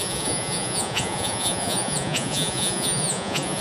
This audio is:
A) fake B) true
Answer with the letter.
A